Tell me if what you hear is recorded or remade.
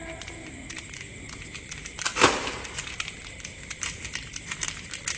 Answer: remade